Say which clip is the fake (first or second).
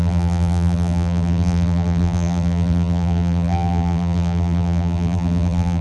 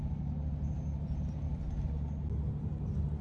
first